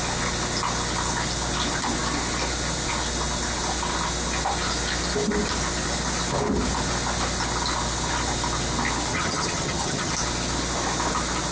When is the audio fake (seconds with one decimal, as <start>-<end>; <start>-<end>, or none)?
9.1-10.1

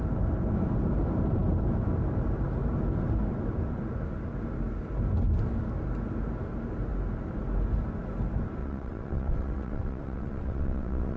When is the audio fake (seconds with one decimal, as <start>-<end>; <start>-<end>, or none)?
8.6-11.2

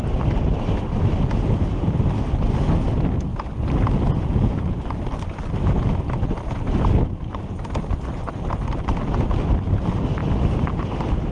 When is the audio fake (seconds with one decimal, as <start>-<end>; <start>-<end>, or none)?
none

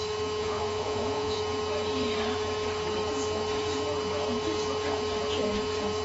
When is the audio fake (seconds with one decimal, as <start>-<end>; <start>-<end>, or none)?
0.4-1.4

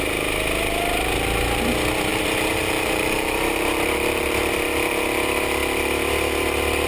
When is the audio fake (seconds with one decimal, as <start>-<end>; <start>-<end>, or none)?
2.1-4.5

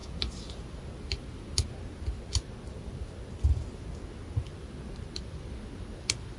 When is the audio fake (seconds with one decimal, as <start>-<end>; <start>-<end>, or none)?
none

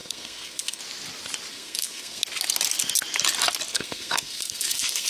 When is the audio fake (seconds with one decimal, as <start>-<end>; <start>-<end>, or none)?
0.0-0.8; 1.5-2.2; 3.7-5.1